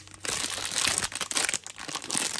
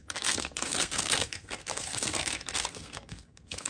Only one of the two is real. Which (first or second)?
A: first